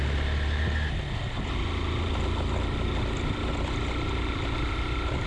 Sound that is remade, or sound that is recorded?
recorded